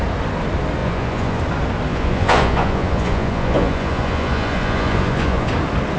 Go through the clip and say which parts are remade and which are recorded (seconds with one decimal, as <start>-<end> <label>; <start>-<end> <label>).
0.0-0.8 recorded; 0.8-1.4 remade; 1.4-1.9 recorded; 1.9-5.5 remade; 5.5-6.0 recorded